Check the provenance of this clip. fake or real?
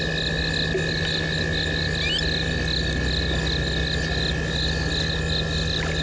real